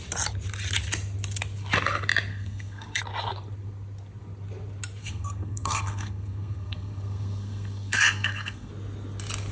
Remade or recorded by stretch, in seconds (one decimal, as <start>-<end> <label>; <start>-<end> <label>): 0.0-2.3 recorded; 2.3-3.0 remade; 3.0-5.0 recorded; 5.0-8.7 remade; 8.7-9.5 recorded